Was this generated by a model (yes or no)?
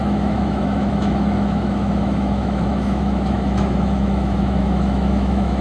yes